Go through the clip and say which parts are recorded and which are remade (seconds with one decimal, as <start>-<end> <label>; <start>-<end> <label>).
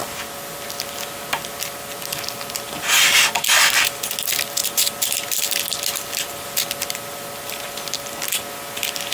0.0-9.1 recorded